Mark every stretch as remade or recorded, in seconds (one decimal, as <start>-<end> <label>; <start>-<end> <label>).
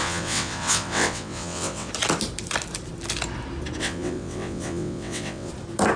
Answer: 0.0-1.9 remade; 1.9-3.8 recorded; 3.8-5.5 remade; 5.5-6.0 recorded